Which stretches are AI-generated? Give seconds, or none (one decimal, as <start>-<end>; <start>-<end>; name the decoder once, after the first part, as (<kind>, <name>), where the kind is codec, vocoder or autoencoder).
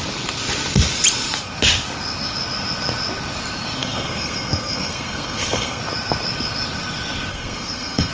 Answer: 3.8-5.8 (codec, SNAC); 7.3-8.1